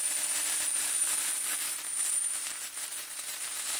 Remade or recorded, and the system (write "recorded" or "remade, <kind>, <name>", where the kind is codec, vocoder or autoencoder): remade, vocoder, BigVGAN v2